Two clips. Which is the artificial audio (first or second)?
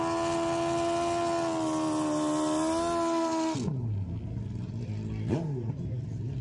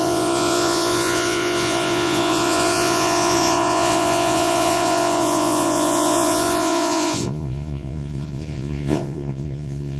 second